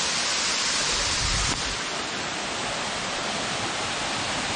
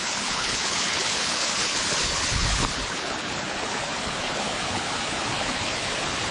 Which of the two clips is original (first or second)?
first